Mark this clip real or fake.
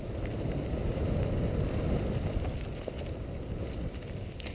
real